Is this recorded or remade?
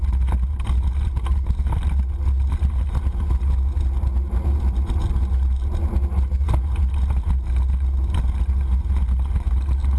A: recorded